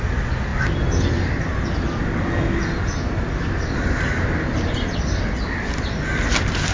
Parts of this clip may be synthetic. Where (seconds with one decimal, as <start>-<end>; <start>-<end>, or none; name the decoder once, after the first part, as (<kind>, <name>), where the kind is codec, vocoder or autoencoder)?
none